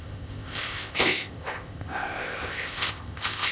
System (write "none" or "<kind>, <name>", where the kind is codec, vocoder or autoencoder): codec, ZipCodec